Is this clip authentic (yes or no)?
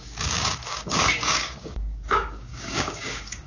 no